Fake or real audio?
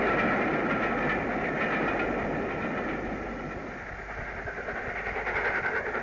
real